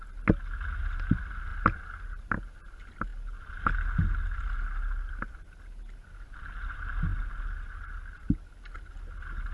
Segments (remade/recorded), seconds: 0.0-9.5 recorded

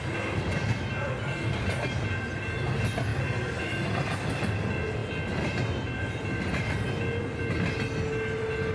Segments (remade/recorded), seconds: 0.0-8.7 recorded

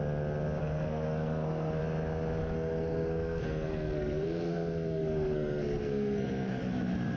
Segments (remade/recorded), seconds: 0.0-0.6 recorded; 0.6-1.8 remade; 1.8-2.4 recorded; 2.4-6.7 remade; 6.7-7.2 recorded